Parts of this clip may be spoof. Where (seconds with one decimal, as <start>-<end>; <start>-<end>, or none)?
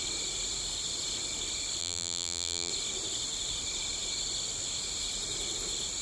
1.8-2.7